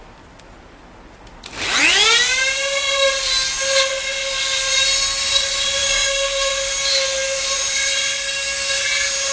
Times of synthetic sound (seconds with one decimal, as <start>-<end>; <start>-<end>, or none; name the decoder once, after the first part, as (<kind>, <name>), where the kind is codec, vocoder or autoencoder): 5.8-6.5 (codec, DAC)